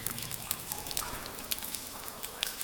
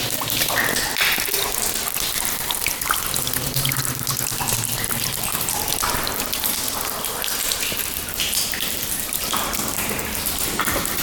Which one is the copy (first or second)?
first